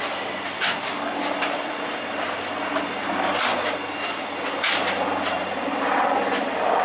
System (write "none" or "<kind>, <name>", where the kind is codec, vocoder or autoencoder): none